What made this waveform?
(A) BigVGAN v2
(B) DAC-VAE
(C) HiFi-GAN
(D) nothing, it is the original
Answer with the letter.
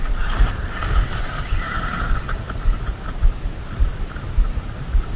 A